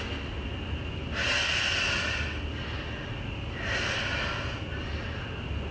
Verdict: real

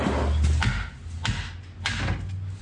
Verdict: real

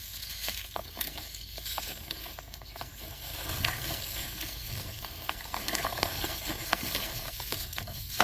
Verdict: fake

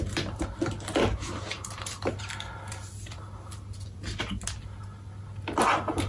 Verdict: real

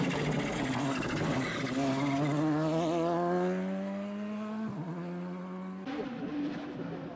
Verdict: real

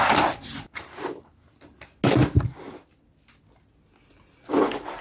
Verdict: real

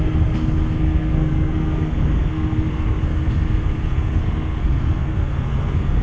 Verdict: fake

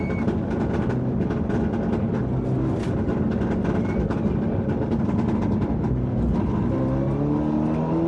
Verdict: real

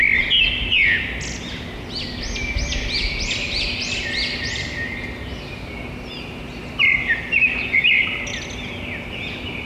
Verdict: real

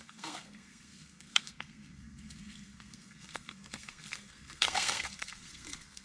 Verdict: fake